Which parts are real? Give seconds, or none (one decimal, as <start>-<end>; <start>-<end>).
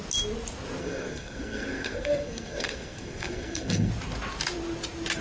0.0-0.8; 3.9-5.2